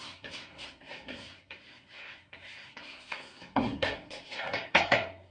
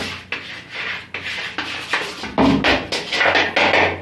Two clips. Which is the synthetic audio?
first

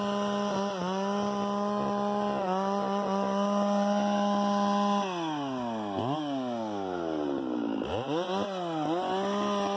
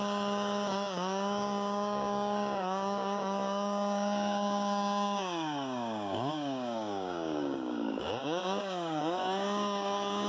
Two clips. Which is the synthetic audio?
second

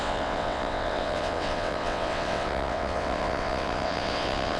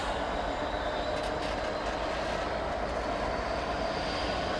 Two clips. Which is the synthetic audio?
first